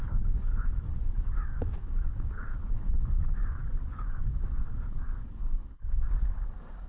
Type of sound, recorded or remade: remade